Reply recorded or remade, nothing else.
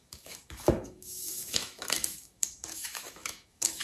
remade